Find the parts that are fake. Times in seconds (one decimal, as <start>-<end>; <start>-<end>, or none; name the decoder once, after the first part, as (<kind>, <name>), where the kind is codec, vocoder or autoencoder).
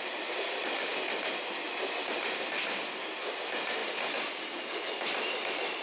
none